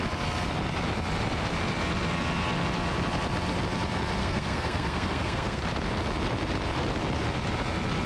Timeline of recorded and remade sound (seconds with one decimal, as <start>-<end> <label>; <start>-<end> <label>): 0.0-4.2 recorded; 4.2-5.6 remade; 5.6-8.1 recorded